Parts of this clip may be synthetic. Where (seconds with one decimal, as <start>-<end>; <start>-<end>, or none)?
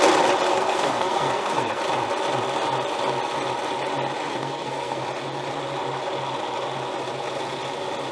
0.5-1.8; 4.3-5.0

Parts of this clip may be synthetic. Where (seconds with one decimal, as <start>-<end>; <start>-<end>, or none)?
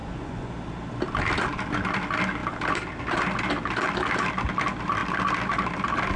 0.0-0.5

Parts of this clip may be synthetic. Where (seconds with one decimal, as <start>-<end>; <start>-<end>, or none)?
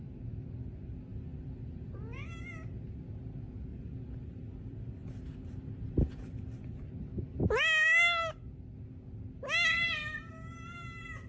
1.1-1.9; 3.7-6.7